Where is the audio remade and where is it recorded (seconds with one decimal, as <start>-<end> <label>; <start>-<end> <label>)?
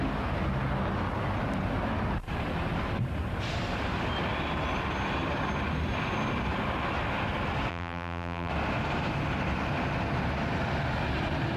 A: 0.0-7.7 recorded; 7.7-8.5 remade; 8.5-11.6 recorded